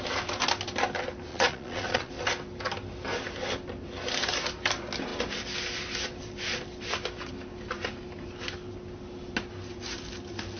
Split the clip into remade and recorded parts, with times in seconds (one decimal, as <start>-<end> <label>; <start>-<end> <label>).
0.0-1.3 recorded; 1.3-2.1 remade; 2.1-10.6 recorded